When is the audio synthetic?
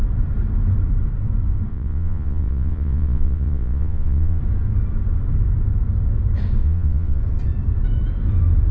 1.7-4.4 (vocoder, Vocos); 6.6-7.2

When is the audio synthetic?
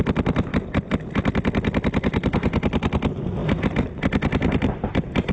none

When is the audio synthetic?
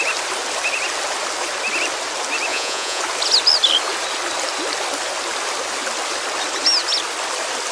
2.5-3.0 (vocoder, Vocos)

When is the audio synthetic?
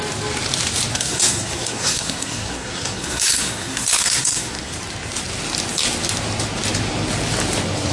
0.9-4.7 (codec, SNAC)